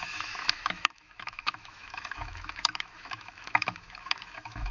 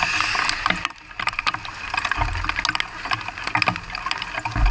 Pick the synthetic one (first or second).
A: first